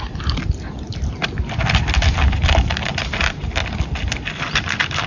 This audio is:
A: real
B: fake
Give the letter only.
A